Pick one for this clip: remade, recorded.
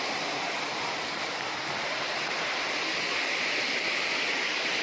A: recorded